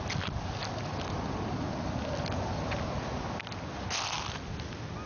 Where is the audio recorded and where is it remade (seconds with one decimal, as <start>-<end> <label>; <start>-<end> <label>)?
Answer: 0.0-5.1 recorded